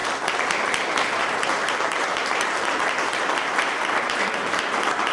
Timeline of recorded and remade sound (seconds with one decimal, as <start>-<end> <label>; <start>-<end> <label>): 0.0-1.2 recorded; 1.2-5.1 remade